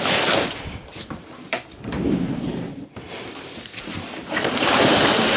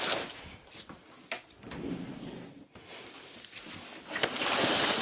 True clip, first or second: second